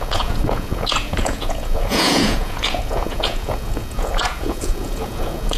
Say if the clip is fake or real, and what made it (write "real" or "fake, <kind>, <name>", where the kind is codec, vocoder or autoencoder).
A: fake, vocoder, Vocos